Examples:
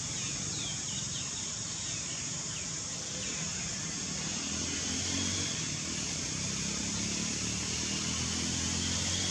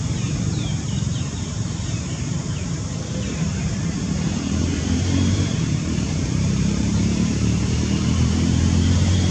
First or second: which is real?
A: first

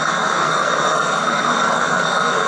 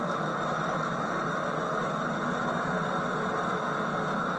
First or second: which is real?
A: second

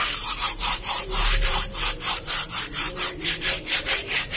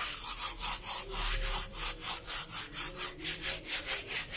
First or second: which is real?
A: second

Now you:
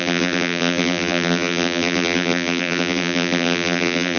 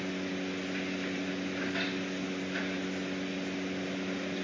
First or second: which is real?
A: second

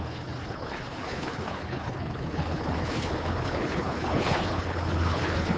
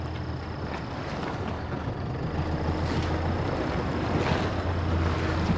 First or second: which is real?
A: second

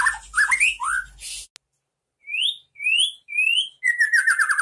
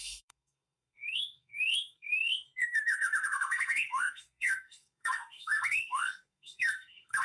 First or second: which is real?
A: first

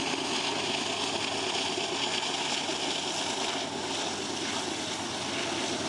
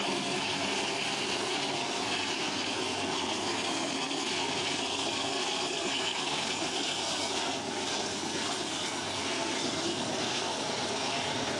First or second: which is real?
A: first